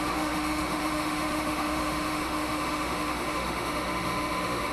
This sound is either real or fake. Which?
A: fake